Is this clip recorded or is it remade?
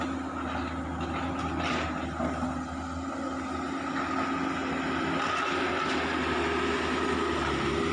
recorded